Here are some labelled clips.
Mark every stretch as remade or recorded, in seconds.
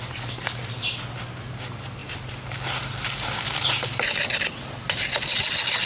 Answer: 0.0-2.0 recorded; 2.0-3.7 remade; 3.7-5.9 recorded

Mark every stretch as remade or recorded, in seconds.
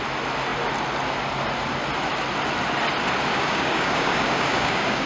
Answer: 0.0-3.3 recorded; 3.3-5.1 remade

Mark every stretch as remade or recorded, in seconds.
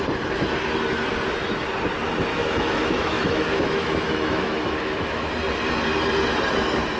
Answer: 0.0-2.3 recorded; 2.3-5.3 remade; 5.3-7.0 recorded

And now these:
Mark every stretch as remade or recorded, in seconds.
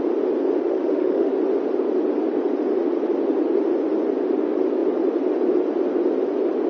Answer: 0.0-0.6 recorded; 0.6-1.3 remade; 1.3-6.7 recorded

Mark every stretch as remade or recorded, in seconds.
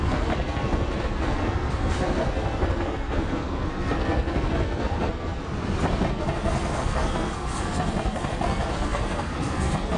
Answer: 0.0-5.4 remade; 5.4-6.1 recorded; 6.1-10.0 remade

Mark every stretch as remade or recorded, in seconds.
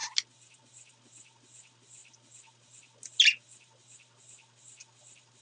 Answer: 0.0-5.4 recorded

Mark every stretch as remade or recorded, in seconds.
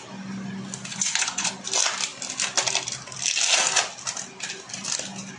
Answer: 0.0-0.9 recorded; 0.9-1.5 remade; 1.5-5.4 recorded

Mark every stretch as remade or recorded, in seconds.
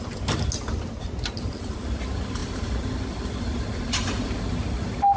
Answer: 0.0-5.2 recorded